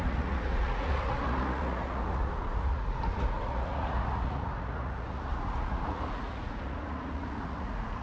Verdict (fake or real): fake